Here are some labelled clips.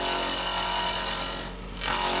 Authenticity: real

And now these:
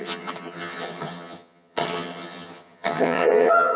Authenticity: fake